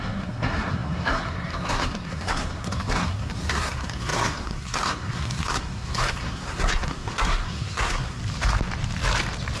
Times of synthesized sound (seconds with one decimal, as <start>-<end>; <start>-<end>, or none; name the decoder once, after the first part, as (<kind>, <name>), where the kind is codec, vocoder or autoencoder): 0.0-8.2 (codec, SNAC)